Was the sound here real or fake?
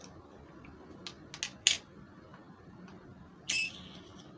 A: real